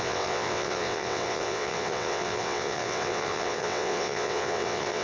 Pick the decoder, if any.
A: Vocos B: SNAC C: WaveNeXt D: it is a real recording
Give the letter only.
C